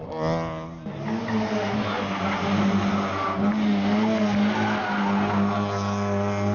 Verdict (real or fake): real